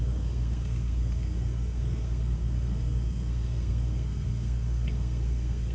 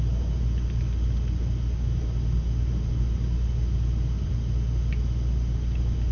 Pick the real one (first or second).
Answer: second